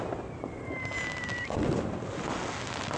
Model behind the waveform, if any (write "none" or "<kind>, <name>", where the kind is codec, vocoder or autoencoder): none